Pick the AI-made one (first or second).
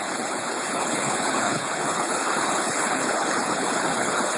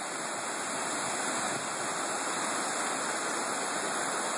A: first